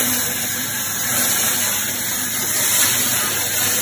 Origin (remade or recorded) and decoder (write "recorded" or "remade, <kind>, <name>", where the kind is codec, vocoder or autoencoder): remade, vocoder, BigVGAN v2